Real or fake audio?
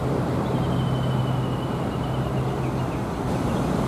real